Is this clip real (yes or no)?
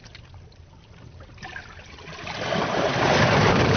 yes